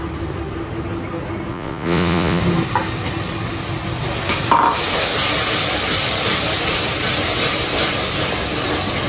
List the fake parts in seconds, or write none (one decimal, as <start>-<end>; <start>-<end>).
1.5-2.4